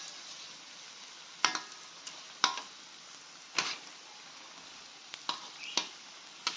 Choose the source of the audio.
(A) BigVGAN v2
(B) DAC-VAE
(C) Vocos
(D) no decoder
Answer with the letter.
D